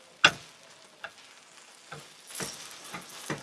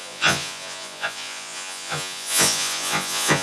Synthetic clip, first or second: second